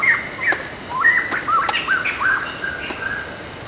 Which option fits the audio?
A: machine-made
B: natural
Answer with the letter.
B